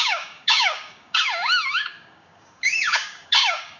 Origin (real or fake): fake